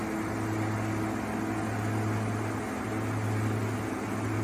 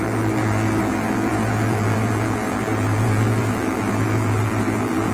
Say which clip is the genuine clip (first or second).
first